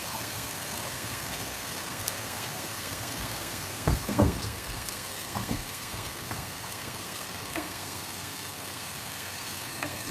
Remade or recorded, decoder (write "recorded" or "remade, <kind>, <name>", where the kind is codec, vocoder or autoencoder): remade, codec, SNAC